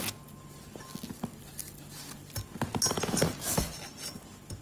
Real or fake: real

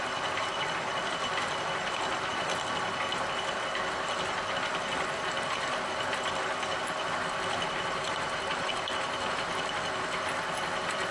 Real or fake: real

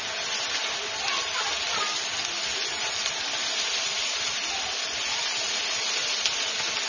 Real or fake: real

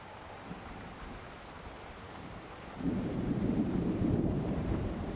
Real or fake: fake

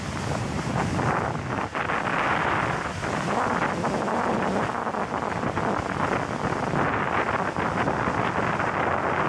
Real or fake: real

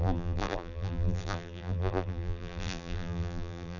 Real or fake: fake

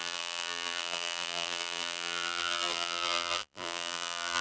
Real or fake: fake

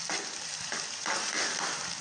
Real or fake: fake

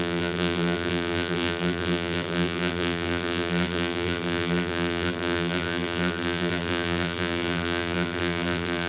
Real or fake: fake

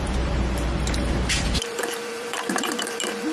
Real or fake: fake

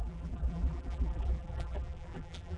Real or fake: fake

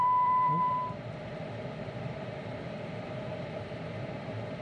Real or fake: fake